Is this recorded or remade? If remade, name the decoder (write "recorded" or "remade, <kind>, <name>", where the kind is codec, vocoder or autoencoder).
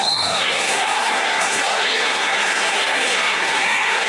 remade, codec, SNAC